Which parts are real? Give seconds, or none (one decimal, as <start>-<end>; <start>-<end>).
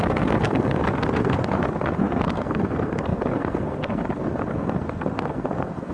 none